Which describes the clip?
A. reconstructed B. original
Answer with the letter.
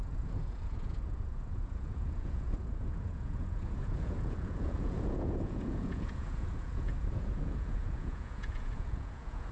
A